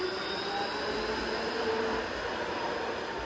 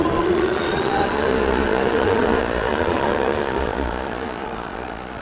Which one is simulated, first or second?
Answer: second